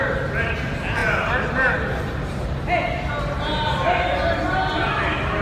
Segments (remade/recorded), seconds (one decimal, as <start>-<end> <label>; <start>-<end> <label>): 0.0-5.4 recorded